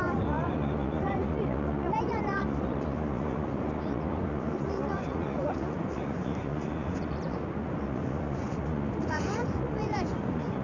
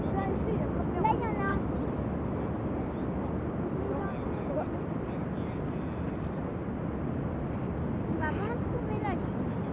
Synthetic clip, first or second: first